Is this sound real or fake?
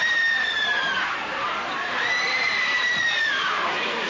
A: fake